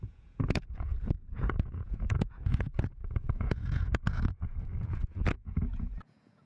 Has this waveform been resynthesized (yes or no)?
yes